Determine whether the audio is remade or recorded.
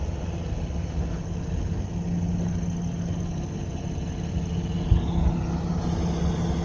recorded